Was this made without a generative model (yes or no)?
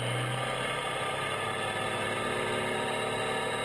yes